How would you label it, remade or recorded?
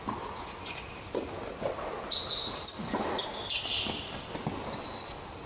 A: recorded